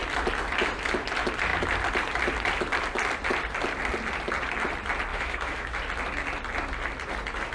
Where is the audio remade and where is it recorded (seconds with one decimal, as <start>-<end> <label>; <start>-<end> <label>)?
0.0-5.1 recorded; 5.1-5.8 remade; 5.8-7.5 recorded